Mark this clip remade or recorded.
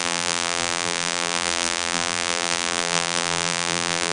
remade